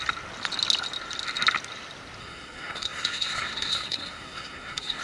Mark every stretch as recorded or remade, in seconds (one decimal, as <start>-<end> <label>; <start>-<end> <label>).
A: 0.0-2.2 recorded; 2.2-5.0 remade